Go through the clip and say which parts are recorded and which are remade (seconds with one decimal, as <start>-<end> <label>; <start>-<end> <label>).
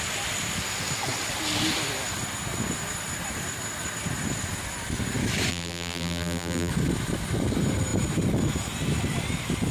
0.0-5.5 recorded; 5.5-6.7 remade; 6.7-9.7 recorded